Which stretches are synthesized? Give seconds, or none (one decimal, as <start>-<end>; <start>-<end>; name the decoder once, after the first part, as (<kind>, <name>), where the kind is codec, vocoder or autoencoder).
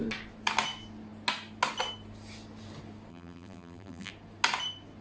3.1-4.1 (vocoder, BigVGAN v2)